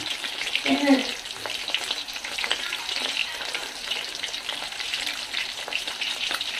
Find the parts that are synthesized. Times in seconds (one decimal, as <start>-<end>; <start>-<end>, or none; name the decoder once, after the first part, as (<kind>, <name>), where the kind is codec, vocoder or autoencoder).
0.0-1.0 (vocoder, BigVGAN v2); 1.7-6.6